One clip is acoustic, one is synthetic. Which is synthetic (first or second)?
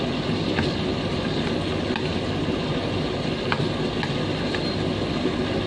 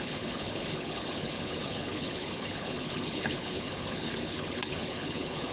second